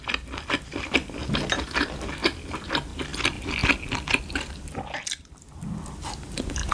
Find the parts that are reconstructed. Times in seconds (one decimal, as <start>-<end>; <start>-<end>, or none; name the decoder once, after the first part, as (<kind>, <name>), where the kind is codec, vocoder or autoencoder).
none